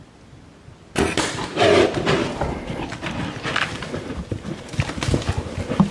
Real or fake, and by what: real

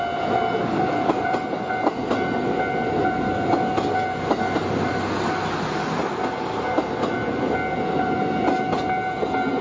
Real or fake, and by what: real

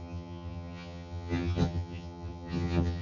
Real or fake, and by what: fake, vocoder, HiFi-GAN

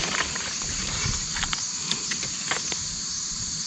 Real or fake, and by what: fake, vocoder, BigVGAN v2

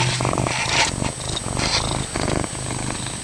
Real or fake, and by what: real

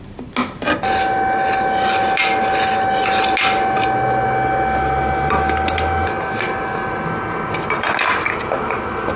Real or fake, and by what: real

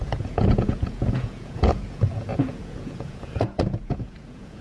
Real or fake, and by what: fake, vocoder, Vocos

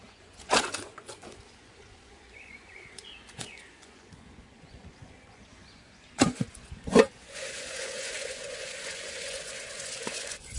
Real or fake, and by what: fake, vocoder, Vocos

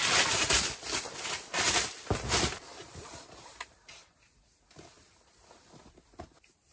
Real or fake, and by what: real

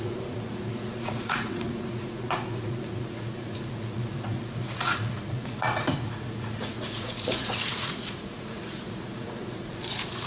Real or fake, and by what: fake, vocoder, Vocos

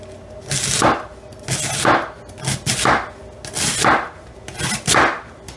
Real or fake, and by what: real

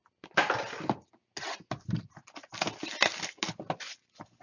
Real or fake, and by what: real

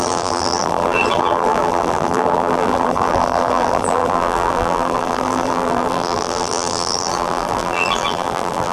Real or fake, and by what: fake, vocoder, BigVGAN v2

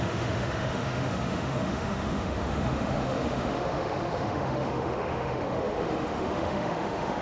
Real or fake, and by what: fake, autoencoder, DAC-VAE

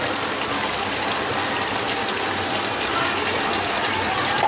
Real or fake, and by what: real